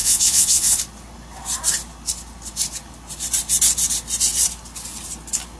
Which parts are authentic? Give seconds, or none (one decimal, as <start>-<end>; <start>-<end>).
0.8-5.6